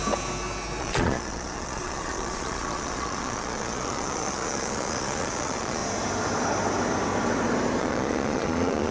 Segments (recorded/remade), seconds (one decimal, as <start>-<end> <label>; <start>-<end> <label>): 0.0-0.8 recorded; 0.8-5.8 remade; 5.8-7.8 recorded; 7.8-8.9 remade